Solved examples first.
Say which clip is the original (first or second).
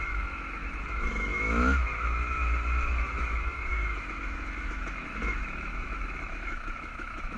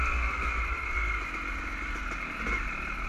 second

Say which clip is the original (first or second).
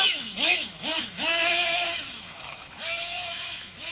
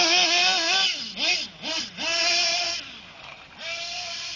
second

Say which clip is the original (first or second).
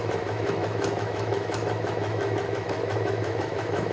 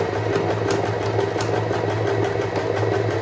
second